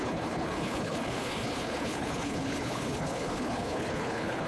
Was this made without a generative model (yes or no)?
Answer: no